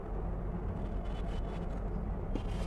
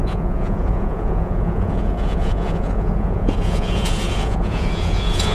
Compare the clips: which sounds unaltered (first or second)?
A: first